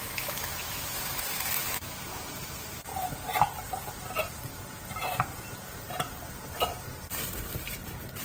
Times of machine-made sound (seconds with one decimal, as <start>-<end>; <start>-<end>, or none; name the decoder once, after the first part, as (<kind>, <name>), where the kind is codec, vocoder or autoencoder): 0.0-2.9 (autoencoder, DAC-VAE)